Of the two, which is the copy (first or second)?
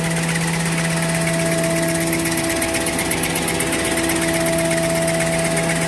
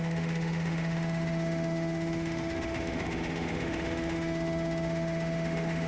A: second